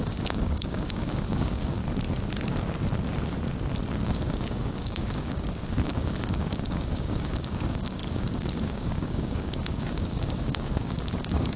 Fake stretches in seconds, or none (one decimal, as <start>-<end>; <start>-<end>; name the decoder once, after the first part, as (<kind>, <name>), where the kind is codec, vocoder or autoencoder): 0.0-1.8 (codec, DAC); 4.0-11.6